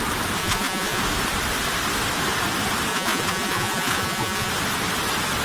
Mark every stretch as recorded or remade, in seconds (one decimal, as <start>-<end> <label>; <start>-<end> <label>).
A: 0.0-0.4 recorded; 0.4-1.0 remade; 1.0-2.9 recorded; 2.9-4.5 remade; 4.5-5.4 recorded